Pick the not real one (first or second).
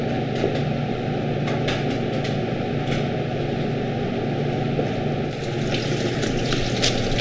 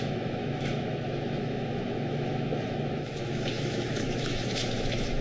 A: second